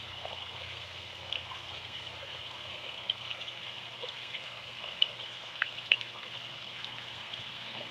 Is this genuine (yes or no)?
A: no